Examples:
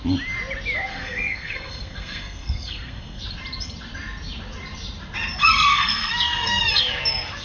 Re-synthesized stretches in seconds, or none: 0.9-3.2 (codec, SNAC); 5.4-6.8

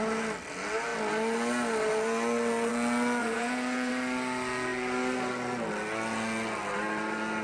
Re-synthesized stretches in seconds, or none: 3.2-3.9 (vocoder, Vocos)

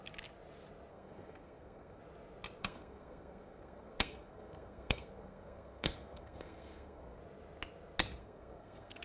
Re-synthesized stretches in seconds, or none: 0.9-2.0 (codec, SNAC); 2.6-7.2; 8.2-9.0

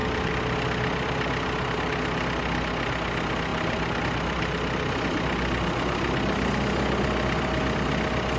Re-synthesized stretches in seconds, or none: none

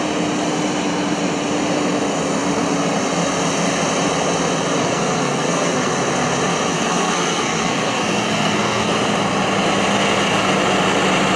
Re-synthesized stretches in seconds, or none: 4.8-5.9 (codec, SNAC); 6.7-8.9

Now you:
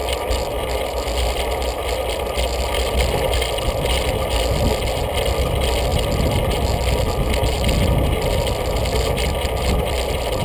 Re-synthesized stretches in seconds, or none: none

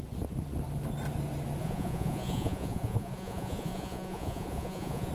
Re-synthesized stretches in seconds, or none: 1.6-5.1 (vocoder, Vocos)